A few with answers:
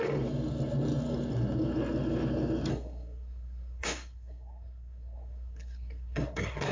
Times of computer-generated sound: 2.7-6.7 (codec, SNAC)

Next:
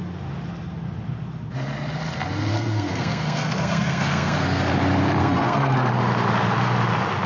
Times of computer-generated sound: 2.5-4.7 (codec, SNAC); 5.2-5.9

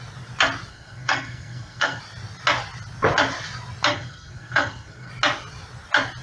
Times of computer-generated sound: 0.7-2.0 (codec, SNAC); 3.9-5.1

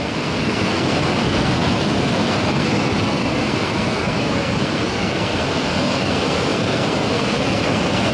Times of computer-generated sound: 0.0-8.1 (codec, SNAC)

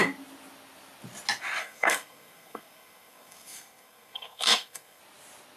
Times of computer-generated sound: 1.6-5.0 (codec, SNAC)

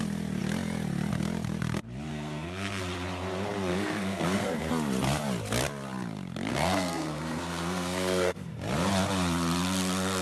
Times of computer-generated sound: 2.1-2.8 (codec, SNAC); 3.7-4.7; 6.5-8.5